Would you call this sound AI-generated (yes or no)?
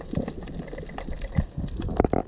yes